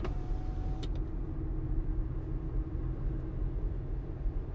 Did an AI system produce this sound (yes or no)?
no